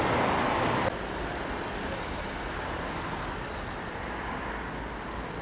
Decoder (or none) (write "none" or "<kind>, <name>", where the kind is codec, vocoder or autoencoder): none